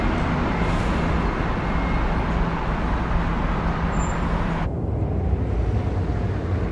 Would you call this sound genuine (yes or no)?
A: yes